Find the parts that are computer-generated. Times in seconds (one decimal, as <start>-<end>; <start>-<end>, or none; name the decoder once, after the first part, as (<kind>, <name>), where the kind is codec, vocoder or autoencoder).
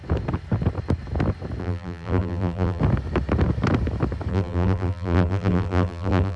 1.6-2.8 (vocoder, BigVGAN v2); 4.3-6.4